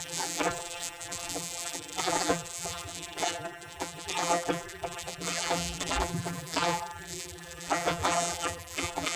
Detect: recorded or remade remade